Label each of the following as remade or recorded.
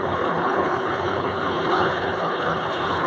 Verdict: remade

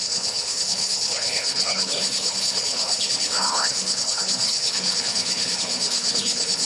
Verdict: remade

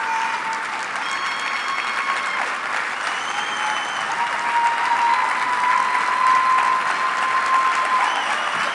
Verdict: recorded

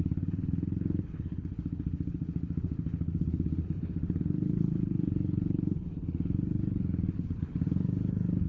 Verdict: remade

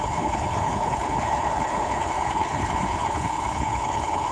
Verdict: remade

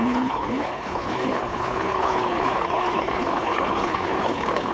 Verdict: remade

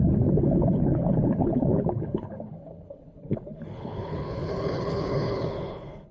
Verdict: remade